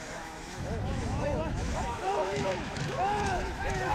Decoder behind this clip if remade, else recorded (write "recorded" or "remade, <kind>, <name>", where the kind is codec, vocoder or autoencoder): remade, autoencoder, DAC-VAE